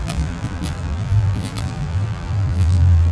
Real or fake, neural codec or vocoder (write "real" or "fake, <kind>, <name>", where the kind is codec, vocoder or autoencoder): fake, vocoder, BigVGAN v2